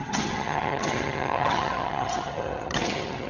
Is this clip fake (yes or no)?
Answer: yes